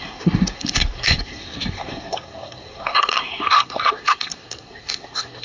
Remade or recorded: remade